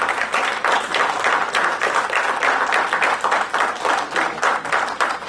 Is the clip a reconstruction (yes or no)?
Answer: no